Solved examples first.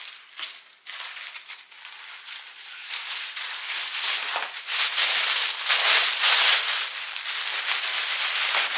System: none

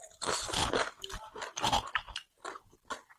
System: vocoder, BigVGAN v2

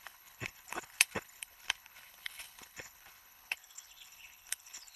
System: codec, HILCodec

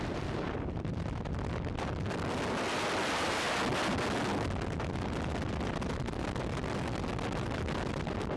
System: none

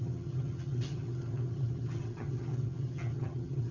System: vocoder, HiFi-GAN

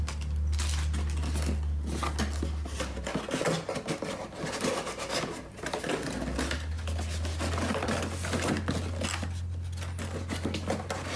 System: none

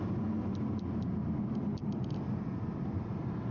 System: none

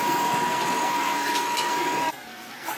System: codec, SNAC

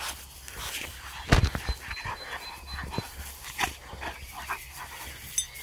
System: none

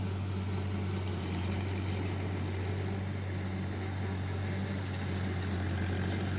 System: none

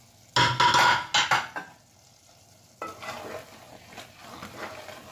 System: none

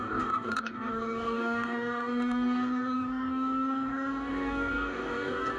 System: codec, DAC